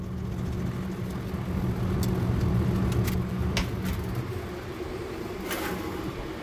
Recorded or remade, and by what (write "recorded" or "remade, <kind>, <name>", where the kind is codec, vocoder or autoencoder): recorded